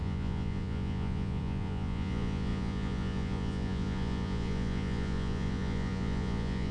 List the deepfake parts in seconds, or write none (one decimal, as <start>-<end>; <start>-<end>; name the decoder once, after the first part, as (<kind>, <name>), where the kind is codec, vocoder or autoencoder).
0.0-6.7 (vocoder, Vocos)